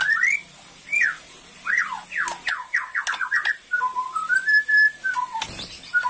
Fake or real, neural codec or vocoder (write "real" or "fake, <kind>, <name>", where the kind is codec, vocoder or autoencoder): real